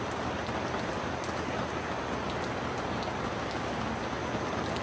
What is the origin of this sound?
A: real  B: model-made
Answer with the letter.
A